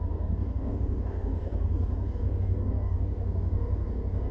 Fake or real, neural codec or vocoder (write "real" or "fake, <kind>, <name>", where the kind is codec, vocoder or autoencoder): fake, codec, DAC